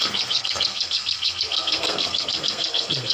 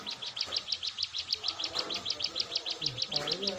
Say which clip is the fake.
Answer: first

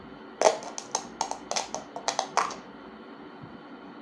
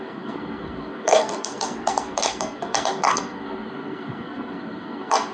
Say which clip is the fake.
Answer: second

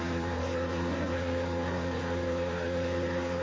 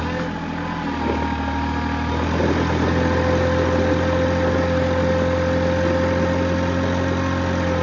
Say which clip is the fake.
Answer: first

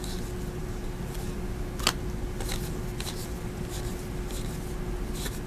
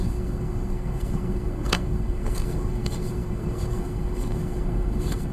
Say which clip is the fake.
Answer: second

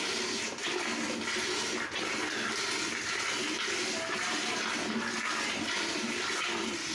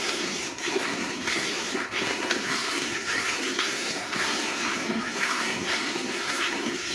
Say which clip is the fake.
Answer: second